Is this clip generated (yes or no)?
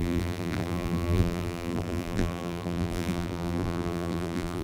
yes